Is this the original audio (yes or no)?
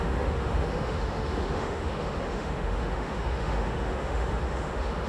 no